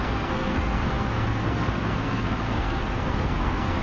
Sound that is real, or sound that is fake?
fake